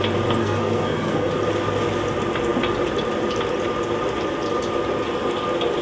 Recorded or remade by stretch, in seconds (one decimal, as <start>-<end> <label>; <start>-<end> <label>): 0.0-0.4 recorded; 0.4-1.3 remade; 1.3-5.8 recorded